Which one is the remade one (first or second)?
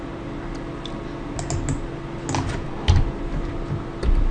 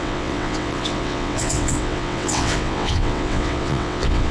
second